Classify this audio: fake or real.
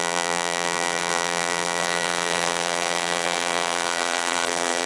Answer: fake